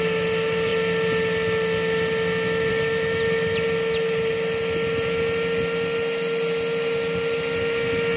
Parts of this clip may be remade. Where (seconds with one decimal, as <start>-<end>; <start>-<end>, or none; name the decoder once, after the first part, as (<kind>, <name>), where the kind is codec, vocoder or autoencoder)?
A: none